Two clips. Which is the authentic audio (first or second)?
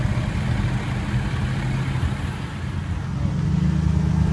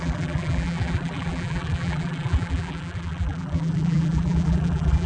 first